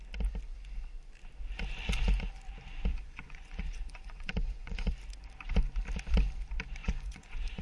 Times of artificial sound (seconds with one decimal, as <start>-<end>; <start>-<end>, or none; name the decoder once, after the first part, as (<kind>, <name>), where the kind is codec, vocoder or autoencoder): 2.9-4.9 (vocoder, Vocos); 6.8-7.6